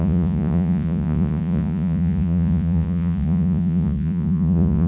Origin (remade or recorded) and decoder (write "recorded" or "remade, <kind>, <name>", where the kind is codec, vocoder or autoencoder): remade, vocoder, Vocos